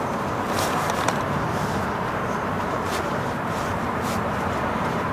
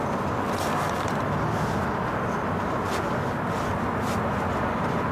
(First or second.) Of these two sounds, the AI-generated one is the first